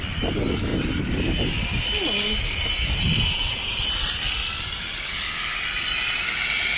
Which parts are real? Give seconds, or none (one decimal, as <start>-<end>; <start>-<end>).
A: 0.0-6.8